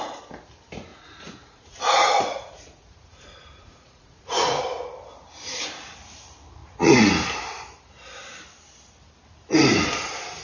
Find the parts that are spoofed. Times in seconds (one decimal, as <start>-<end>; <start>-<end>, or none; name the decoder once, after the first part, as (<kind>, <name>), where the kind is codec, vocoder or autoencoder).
0.9-4.6 (vocoder, Vocos); 6.6-7.1